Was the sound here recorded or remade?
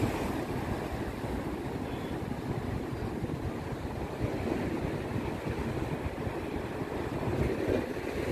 recorded